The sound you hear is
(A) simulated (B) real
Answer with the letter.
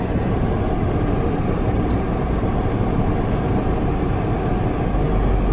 B